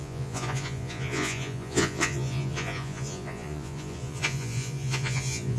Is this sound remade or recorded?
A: remade